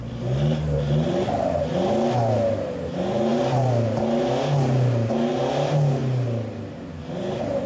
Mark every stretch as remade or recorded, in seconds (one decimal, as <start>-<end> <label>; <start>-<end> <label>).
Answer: 0.0-7.7 recorded